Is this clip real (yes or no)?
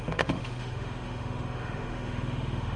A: no